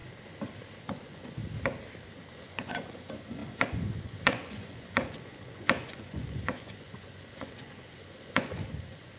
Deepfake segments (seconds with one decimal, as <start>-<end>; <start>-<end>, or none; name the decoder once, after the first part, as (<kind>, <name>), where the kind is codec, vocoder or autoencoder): 0.8-1.4 (vocoder, Vocos); 2.3-9.2